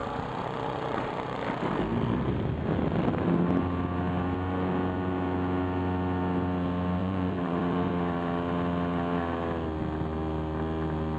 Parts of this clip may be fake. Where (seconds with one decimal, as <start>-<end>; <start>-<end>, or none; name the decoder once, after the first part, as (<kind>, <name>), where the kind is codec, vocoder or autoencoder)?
0.0-1.4 (vocoder, Vocos); 7.0-7.9

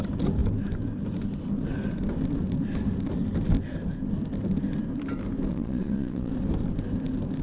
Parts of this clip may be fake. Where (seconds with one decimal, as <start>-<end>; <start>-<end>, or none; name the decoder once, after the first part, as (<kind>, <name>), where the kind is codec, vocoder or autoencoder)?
5.5-6.3 (vocoder, Vocos)

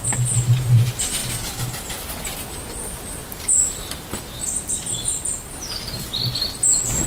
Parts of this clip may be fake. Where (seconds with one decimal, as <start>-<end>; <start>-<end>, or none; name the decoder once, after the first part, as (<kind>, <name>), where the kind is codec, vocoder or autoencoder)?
none

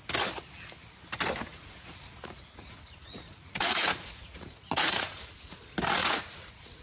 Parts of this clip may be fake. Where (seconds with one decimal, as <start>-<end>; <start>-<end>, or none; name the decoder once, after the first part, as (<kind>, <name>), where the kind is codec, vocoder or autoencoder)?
1.5-5.6 (vocoder, Vocos); 6.0-6.8

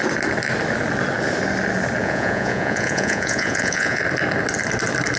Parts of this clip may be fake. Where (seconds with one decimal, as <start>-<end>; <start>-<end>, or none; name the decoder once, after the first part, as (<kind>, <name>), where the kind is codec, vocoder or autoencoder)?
2.0-4.0 (vocoder, Vocos)

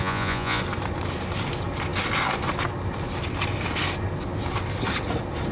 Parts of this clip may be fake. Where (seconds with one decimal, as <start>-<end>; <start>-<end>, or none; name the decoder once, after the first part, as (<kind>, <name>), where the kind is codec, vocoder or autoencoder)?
0.0-0.6 (vocoder, Vocos)